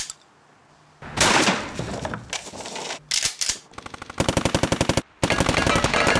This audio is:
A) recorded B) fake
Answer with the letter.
A